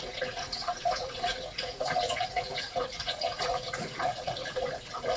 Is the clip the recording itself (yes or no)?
no